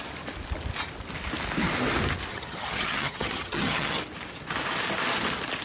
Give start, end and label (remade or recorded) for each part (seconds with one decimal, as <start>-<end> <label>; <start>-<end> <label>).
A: 0.0-2.3 recorded; 2.3-4.0 remade; 4.0-5.6 recorded